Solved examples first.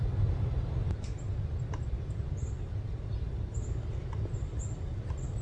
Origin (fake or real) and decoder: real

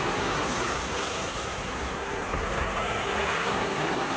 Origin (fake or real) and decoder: fake, codec, SNAC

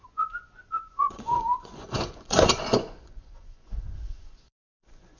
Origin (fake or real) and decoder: fake, vocoder, Vocos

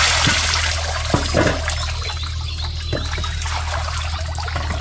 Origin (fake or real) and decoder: real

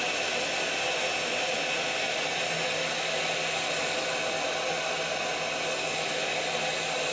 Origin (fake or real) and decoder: real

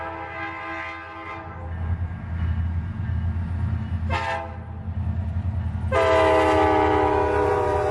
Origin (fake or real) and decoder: real